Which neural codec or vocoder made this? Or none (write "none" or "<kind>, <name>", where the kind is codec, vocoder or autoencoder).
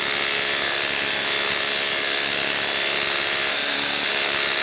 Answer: none